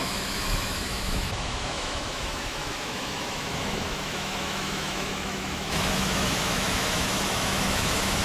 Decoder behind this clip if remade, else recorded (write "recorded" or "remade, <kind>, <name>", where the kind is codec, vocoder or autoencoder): remade, autoencoder, DAC-VAE